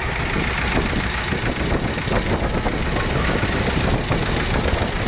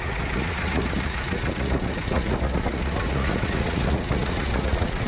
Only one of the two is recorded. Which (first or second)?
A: first